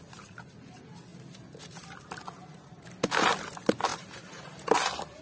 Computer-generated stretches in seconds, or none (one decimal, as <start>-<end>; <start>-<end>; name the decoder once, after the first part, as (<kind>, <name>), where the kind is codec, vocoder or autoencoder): none